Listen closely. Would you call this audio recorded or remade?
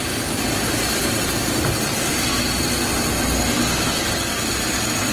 recorded